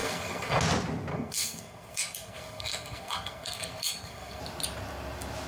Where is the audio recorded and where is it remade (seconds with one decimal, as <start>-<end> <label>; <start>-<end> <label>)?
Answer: 0.0-0.6 remade; 0.6-1.1 recorded; 1.1-4.4 remade; 4.4-5.5 recorded